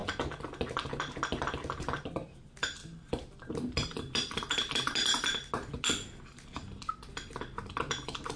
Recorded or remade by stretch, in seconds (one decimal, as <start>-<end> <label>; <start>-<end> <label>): 0.0-8.4 recorded